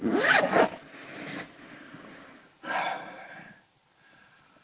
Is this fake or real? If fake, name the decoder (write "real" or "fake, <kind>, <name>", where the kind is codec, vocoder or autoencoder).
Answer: real